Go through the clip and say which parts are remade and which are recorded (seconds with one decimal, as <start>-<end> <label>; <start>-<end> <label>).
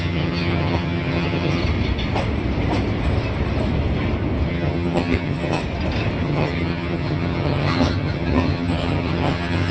0.0-1.6 remade; 1.6-4.5 recorded; 4.5-5.6 remade; 5.6-6.2 recorded; 6.2-9.7 remade